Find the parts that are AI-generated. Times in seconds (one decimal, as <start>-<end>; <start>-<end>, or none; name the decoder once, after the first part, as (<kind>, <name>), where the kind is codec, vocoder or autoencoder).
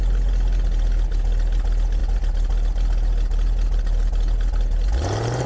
none